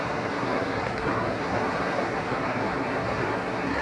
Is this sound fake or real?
fake